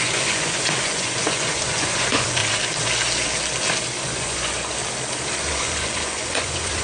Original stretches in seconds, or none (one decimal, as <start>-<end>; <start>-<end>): 2.4-4.0; 4.8-5.5